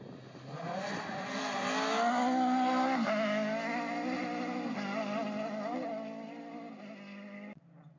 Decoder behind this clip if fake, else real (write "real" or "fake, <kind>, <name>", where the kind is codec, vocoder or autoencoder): real